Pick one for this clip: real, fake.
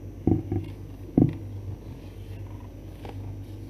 real